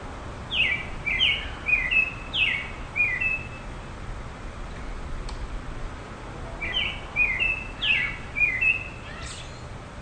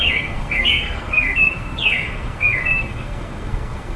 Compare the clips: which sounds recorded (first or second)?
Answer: first